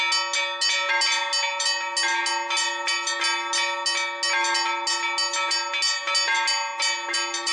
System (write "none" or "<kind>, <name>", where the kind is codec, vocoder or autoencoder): none